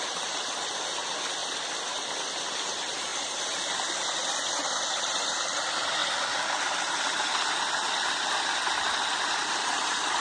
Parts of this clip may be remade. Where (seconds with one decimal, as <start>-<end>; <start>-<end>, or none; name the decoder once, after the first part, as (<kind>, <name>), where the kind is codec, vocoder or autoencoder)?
1.4-2.4 (vocoder, BigVGAN v2); 3.1-5.0; 6.0-10.2